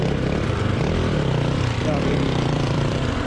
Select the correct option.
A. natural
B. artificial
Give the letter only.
B